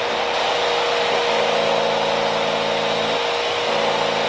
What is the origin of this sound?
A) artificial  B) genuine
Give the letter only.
B